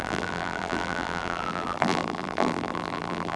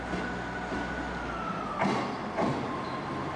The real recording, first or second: second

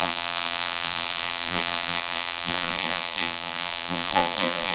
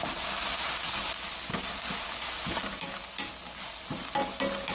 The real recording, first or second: second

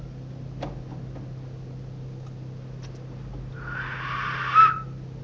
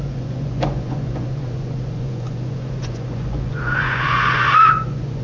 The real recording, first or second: first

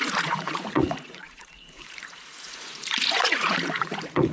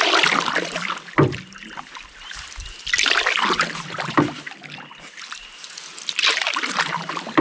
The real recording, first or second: second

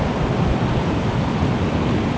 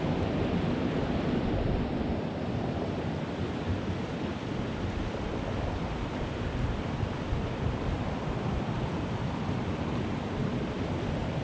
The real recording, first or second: first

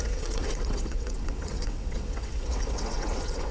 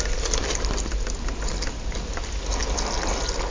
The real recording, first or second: second